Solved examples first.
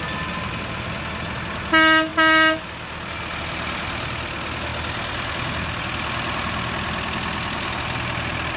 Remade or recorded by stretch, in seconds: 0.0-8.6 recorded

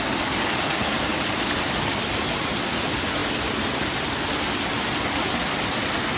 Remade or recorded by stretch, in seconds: 0.0-6.2 recorded

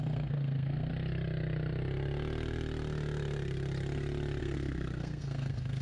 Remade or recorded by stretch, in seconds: 0.0-0.9 remade; 0.9-4.4 recorded; 4.4-5.8 remade

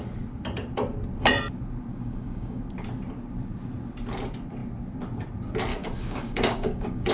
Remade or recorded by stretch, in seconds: 0.0-1.9 recorded; 1.9-2.6 remade; 2.6-5.7 recorded; 5.7-7.1 remade